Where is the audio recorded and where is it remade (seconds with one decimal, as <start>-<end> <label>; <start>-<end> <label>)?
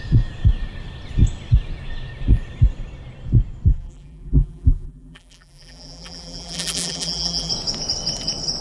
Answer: 0.0-3.7 recorded; 3.7-7.5 remade; 7.5-8.6 recorded